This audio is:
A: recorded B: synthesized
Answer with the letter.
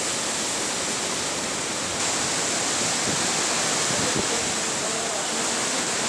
A